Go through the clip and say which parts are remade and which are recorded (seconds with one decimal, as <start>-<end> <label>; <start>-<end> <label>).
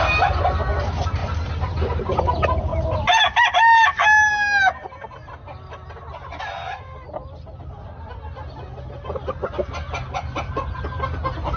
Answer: 0.0-11.6 recorded